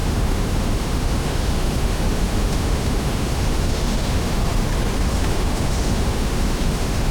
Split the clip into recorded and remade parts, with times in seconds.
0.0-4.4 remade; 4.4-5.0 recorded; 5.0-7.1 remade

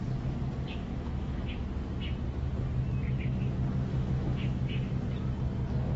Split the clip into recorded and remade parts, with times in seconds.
0.0-0.8 recorded; 0.8-1.5 remade; 1.5-3.9 recorded; 3.9-4.6 remade; 4.6-6.0 recorded

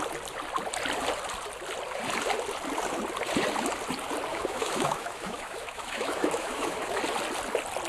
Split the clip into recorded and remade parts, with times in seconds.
0.0-4.3 recorded; 4.3-7.0 remade; 7.0-7.9 recorded